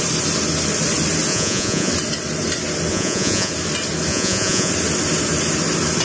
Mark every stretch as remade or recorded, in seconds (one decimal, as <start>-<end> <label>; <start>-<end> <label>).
0.0-1.3 recorded; 1.3-1.9 remade; 1.9-2.9 recorded; 2.9-3.5 remade; 3.5-4.1 recorded; 4.1-4.7 remade; 4.7-6.0 recorded